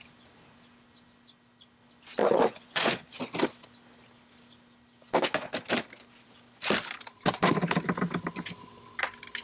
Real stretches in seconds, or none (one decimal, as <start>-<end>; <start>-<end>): 0.0-2.2; 3.1-9.4